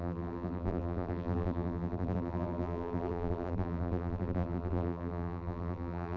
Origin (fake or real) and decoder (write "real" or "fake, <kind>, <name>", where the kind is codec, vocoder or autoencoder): fake, vocoder, BigVGAN v2